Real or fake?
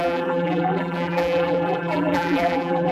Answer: fake